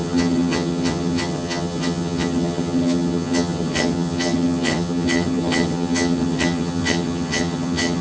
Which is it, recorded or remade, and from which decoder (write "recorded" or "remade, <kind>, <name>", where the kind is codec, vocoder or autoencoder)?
remade, vocoder, HiFi-GAN